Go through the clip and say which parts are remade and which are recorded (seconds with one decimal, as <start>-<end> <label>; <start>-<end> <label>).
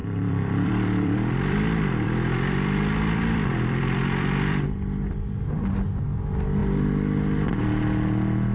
0.0-4.7 remade; 4.7-8.5 recorded